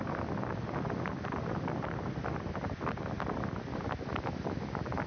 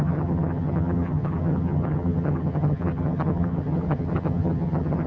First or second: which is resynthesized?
second